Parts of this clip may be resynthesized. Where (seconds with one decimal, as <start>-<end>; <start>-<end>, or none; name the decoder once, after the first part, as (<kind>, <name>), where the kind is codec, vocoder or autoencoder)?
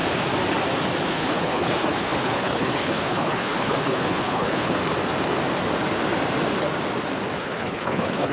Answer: 1.1-4.8 (codec, HILCodec); 7.4-8.3